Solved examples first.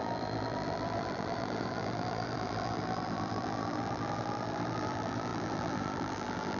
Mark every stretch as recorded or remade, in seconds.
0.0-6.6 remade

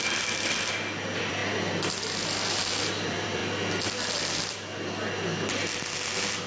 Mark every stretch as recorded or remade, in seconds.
0.0-1.4 remade; 1.4-2.8 recorded; 2.8-3.4 remade; 3.4-4.1 recorded; 4.1-5.3 remade; 5.3-6.5 recorded

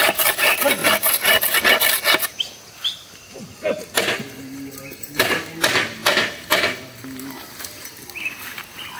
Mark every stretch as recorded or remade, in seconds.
0.0-9.0 recorded

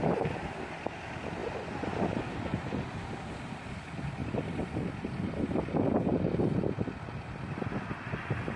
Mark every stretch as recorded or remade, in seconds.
0.0-1.4 recorded; 1.4-2.0 remade; 2.0-4.2 recorded; 4.2-6.6 remade; 6.6-8.6 recorded

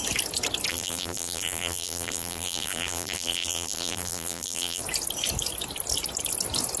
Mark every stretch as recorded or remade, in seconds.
0.0-0.7 recorded; 0.7-4.8 remade; 4.8-6.8 recorded

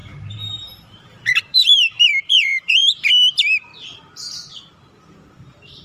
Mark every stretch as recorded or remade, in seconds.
0.0-3.1 remade; 3.1-5.8 recorded